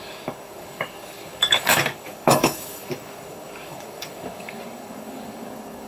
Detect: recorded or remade remade